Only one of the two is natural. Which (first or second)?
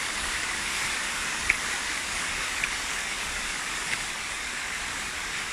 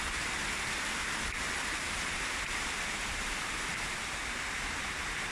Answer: second